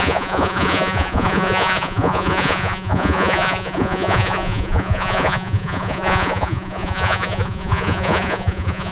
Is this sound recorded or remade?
remade